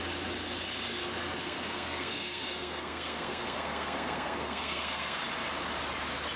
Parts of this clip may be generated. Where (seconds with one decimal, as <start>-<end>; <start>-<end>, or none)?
1.4-5.2